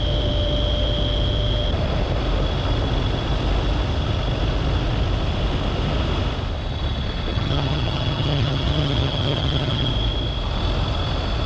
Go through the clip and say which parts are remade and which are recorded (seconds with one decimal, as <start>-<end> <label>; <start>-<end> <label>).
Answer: 0.0-7.3 recorded; 7.3-9.9 remade; 9.9-11.5 recorded